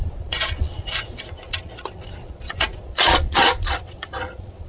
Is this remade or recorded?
remade